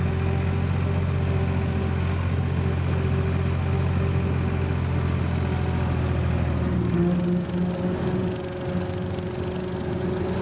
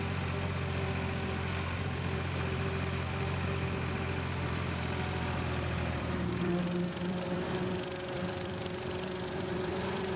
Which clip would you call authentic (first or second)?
first